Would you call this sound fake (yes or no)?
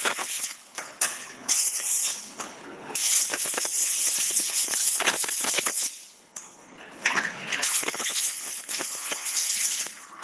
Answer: yes